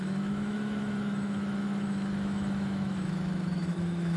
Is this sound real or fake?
fake